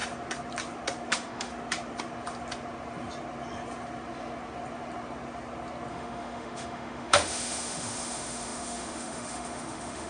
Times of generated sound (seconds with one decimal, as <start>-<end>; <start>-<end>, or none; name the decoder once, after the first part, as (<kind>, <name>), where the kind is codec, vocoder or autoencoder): 1.1-1.5 (autoencoder, DAC-VAE); 5.9-10.1

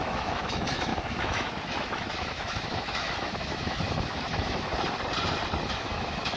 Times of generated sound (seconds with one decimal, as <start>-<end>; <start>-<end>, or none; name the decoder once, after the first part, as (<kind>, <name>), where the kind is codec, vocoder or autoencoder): 0.0-4.7 (autoencoder, DAC-VAE); 5.7-6.4

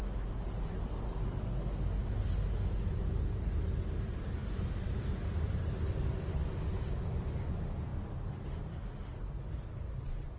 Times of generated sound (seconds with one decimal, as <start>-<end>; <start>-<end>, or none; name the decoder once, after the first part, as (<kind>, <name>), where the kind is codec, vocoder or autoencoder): none

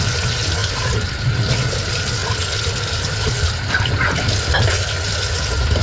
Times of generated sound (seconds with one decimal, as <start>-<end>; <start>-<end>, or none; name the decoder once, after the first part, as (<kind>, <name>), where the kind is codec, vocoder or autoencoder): none

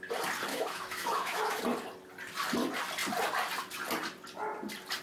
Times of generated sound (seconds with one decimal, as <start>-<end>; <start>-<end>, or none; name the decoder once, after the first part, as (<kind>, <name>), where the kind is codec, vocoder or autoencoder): 0.5-1.6 (autoencoder, DAC-VAE)

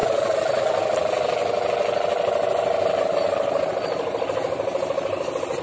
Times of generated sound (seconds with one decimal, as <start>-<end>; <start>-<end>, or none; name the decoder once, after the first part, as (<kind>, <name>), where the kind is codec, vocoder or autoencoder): none

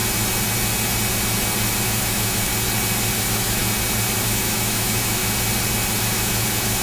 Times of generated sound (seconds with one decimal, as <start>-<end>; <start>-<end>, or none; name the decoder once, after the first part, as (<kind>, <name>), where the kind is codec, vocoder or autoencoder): 1.7-2.5 (autoencoder, DAC-VAE); 3.2-3.6; 4.2-5.2; 6.0-6.8

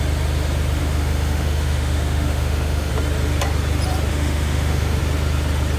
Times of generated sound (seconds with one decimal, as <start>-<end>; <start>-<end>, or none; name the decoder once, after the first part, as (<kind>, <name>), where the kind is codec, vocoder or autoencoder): 0.8-2.9 (autoencoder, DAC-VAE); 4.1-5.0